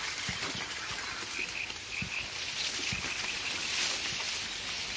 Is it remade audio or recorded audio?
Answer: recorded